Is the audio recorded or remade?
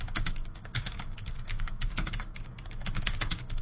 remade